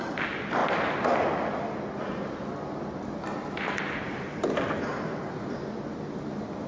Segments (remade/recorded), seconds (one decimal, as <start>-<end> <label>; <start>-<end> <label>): 0.0-6.7 recorded

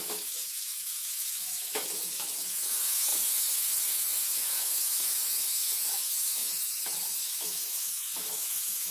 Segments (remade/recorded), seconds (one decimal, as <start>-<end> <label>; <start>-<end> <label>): 0.0-8.9 remade

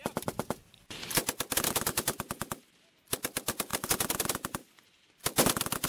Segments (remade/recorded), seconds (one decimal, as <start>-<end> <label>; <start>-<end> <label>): 0.0-5.9 recorded

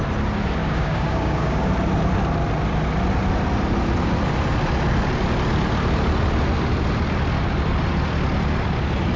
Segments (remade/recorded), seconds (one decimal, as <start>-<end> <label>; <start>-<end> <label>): 0.0-0.6 recorded; 0.6-1.7 remade; 1.7-9.2 recorded

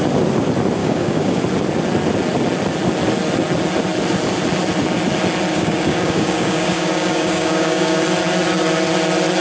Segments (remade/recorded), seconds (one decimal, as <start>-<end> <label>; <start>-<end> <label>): 0.0-0.8 recorded; 0.8-1.4 remade; 1.4-5.5 recorded; 5.5-8.0 remade; 8.0-9.4 recorded

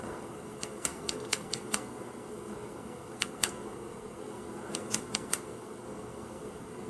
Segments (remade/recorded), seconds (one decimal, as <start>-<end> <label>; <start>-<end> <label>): 0.0-6.9 remade

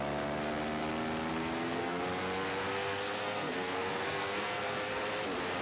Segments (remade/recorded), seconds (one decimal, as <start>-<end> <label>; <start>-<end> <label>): 0.0-1.3 recorded; 1.3-2.0 remade; 2.0-2.7 recorded; 2.7-5.0 remade; 5.0-5.6 recorded

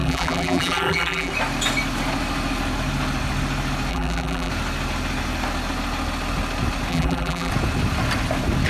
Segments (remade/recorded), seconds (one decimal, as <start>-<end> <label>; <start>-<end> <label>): 0.0-1.3 remade; 1.3-3.9 recorded; 3.9-4.5 remade; 4.5-6.9 recorded; 6.9-7.5 remade; 7.5-8.7 recorded